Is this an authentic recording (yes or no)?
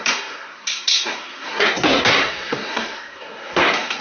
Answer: no